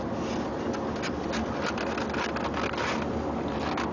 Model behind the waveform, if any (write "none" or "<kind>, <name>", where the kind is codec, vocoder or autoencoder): none